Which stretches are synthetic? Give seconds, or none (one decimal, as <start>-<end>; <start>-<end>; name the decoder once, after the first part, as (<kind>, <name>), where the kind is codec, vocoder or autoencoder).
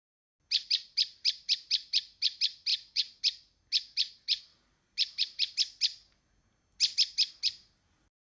2.7-3.2 (vocoder, Vocos)